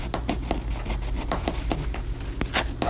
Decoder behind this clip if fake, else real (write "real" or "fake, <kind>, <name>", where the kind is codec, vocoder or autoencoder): real